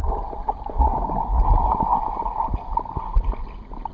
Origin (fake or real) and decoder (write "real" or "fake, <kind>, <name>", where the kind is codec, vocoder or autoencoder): real